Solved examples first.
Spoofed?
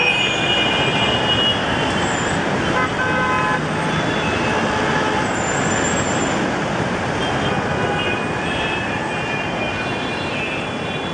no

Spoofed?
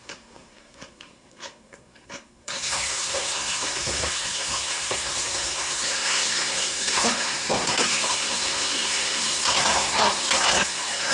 yes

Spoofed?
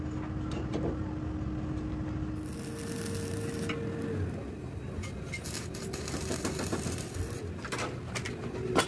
no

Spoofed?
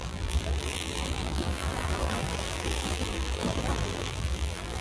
yes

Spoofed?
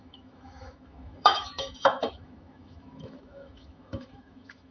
yes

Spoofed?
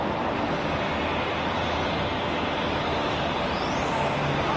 no